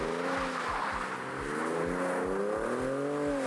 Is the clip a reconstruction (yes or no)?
no